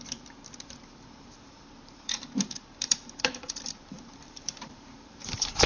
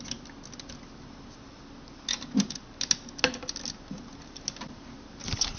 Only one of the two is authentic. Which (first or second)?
second